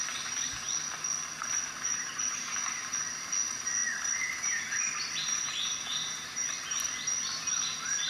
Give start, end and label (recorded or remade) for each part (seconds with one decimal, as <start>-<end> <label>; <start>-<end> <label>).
0.0-8.1 recorded